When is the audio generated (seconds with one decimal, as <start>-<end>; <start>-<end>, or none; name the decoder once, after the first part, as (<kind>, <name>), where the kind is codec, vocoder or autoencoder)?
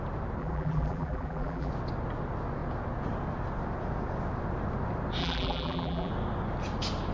0.4-1.7 (vocoder, BigVGAN v2); 5.2-6.1